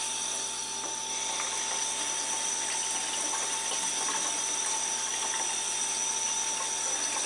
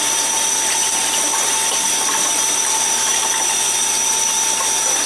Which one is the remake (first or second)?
second